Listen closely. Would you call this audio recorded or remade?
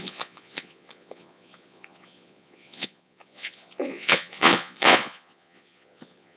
remade